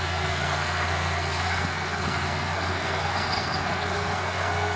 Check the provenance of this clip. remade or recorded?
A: remade